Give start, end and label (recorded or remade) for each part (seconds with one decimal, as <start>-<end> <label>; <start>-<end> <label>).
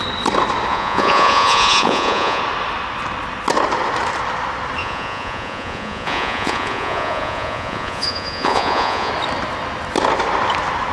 0.0-0.7 recorded; 0.7-2.4 remade; 2.4-4.8 recorded; 4.8-9.1 remade; 9.1-10.9 recorded